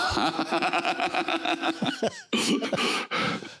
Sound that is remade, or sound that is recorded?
remade